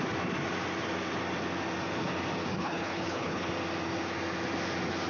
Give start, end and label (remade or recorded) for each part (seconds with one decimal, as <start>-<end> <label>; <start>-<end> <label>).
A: 0.0-2.5 recorded; 2.5-3.5 remade; 3.5-5.1 recorded